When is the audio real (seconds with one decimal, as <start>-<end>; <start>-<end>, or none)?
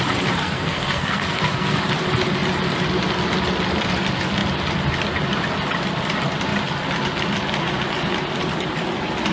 0.0-0.4; 1.8-9.3